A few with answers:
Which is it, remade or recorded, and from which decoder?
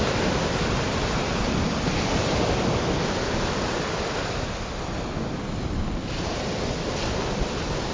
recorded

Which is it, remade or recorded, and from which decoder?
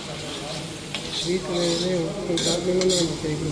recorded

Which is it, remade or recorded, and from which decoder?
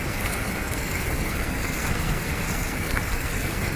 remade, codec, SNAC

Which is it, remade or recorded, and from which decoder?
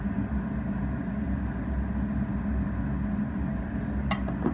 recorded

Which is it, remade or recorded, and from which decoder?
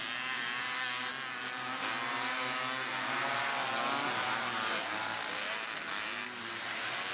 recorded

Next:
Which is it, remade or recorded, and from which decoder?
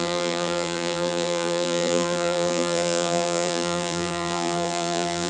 remade, vocoder, BigVGAN v2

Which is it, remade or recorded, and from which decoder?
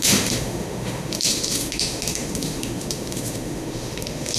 remade, autoencoder, DAC-VAE